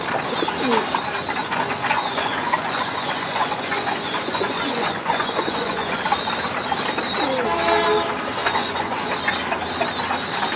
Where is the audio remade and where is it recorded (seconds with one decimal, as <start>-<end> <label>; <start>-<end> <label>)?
0.0-1.4 recorded; 1.4-6.0 remade; 6.0-8.4 recorded; 8.4-9.1 remade; 9.1-10.6 recorded